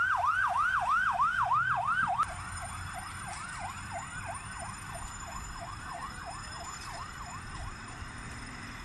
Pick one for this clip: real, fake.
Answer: fake